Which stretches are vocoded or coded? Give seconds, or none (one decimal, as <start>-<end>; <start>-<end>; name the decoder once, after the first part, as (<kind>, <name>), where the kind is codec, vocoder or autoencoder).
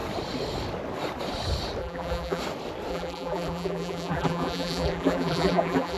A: 1.8-2.4 (vocoder, BigVGAN v2); 2.9-6.0